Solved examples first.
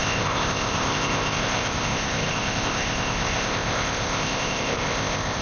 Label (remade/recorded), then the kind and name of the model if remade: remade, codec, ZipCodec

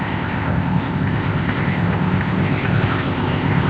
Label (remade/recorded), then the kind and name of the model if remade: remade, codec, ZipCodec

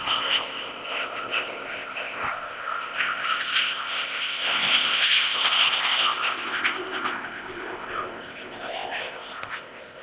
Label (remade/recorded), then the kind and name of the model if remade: remade, codec, ZipCodec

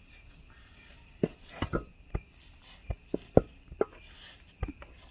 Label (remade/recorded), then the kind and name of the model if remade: recorded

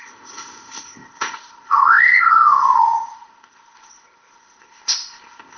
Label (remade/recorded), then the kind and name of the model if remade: remade, codec, ZipCodec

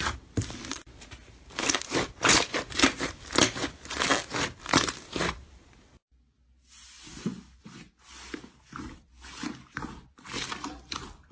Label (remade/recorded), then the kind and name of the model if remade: recorded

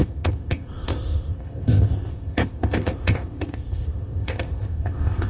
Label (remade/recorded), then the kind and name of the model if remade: remade, codec, ZipCodec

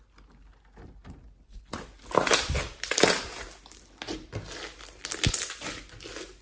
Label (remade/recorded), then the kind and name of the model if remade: recorded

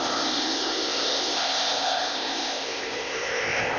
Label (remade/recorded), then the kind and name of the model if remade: remade, codec, ZipCodec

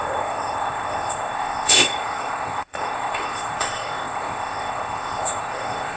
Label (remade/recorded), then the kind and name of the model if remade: remade, codec, ZipCodec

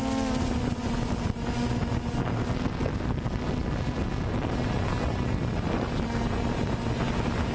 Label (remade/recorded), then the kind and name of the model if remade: recorded